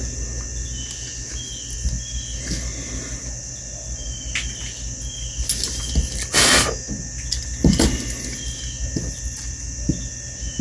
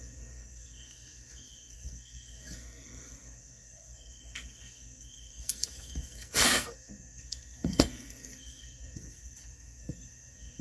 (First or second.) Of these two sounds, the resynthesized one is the second